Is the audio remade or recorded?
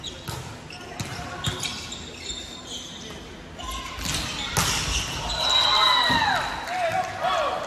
recorded